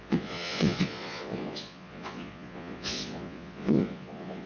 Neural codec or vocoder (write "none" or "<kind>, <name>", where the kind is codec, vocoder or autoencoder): vocoder, Vocos